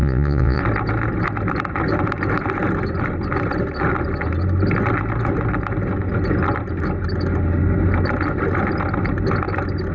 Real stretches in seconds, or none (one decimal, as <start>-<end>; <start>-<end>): 0.6-9.9